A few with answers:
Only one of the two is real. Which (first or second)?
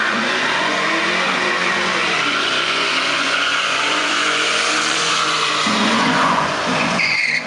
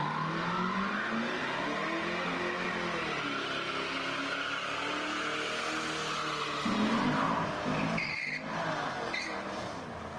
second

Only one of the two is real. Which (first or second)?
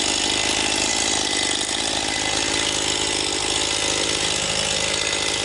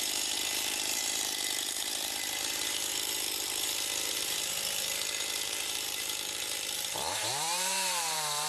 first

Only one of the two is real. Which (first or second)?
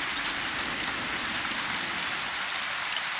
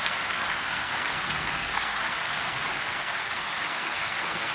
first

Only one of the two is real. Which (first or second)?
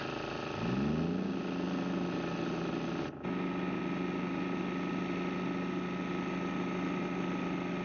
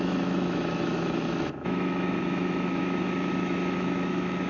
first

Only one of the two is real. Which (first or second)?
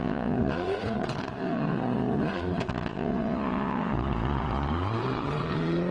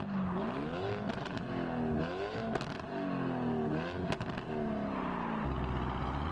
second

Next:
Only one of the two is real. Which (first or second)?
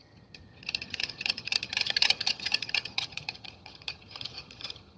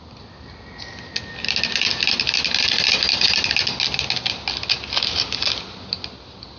second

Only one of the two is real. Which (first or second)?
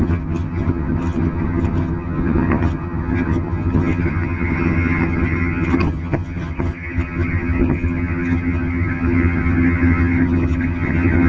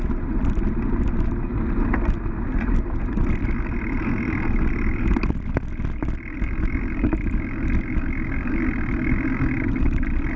second